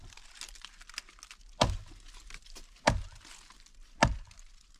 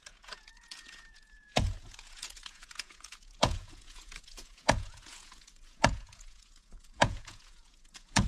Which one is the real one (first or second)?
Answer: first